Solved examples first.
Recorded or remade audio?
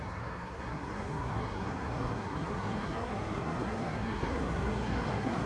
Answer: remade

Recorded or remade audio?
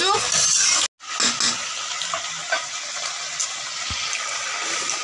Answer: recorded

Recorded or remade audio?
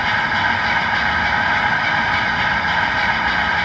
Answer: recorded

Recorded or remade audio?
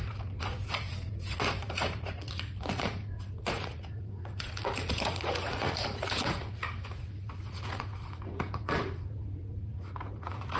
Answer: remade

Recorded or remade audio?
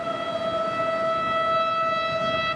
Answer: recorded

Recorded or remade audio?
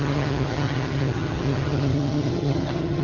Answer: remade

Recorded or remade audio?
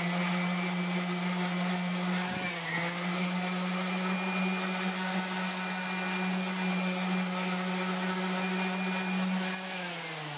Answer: recorded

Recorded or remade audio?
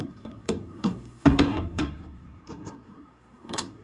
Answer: remade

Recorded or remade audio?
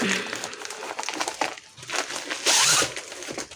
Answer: recorded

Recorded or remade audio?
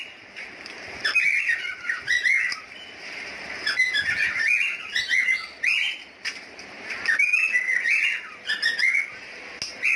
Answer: recorded